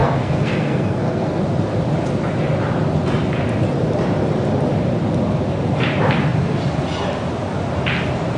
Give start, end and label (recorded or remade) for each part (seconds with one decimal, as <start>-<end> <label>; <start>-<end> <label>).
0.0-1.4 remade; 1.4-8.4 recorded